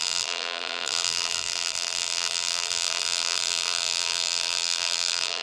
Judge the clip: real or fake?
fake